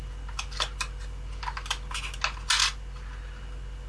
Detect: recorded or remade recorded